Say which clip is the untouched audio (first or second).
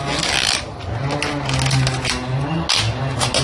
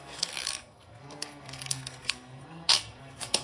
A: first